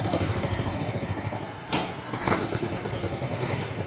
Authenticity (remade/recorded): remade